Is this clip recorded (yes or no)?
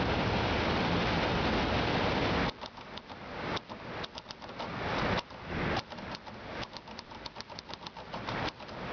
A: yes